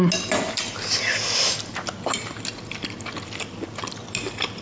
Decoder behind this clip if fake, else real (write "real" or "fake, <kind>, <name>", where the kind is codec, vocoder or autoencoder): real